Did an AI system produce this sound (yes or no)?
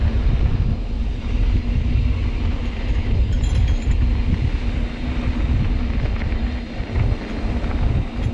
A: no